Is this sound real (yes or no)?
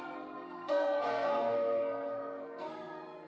no